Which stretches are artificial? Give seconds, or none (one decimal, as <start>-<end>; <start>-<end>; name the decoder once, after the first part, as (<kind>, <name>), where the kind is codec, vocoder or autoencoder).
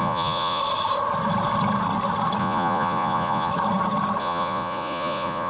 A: 0.0-0.6 (vocoder, Vocos); 2.4-3.5; 4.2-5.5